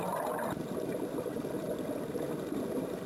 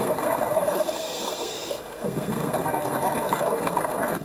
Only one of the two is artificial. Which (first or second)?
second